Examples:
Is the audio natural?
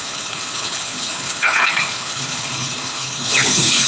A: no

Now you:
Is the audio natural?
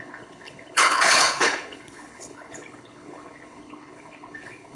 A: no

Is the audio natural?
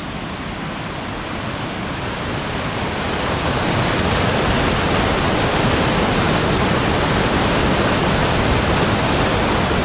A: yes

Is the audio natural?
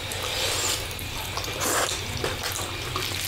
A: no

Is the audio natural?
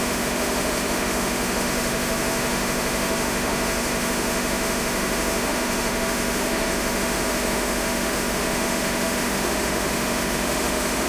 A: no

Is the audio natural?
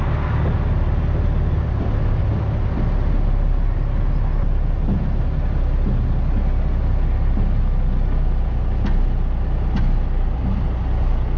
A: yes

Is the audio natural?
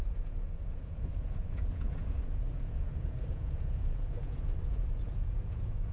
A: no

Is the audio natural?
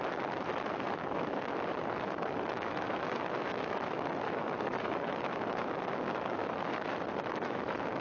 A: no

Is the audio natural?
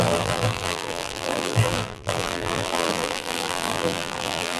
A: no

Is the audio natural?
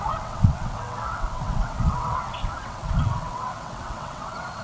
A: no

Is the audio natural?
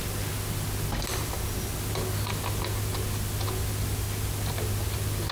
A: yes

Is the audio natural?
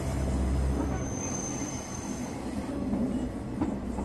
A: yes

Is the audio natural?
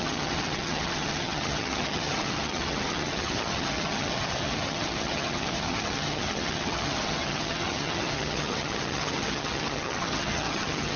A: no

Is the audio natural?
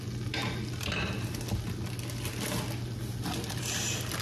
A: yes